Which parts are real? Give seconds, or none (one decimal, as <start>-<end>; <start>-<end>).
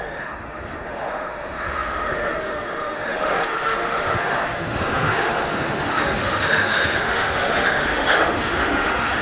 none